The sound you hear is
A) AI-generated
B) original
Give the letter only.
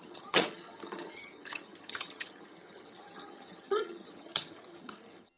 A